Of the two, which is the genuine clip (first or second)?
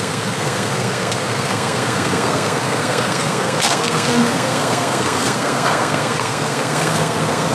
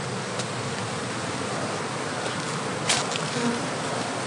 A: second